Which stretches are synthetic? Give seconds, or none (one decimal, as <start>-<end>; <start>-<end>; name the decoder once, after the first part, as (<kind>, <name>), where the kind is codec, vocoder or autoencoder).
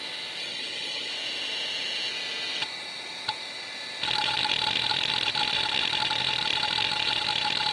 0.4-1.1 (codec, HILCodec)